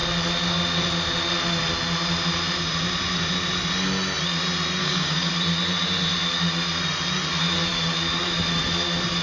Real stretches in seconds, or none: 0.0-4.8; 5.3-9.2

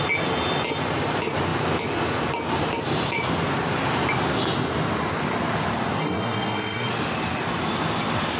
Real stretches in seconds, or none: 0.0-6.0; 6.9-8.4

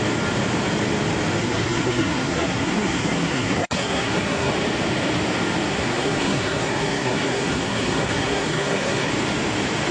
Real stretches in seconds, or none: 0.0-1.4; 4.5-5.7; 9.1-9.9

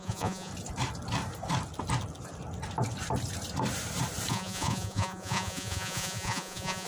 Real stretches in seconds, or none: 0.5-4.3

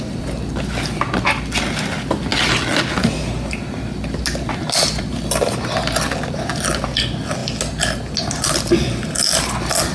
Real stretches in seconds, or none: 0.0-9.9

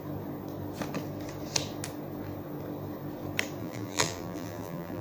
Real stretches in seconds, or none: 0.0-3.6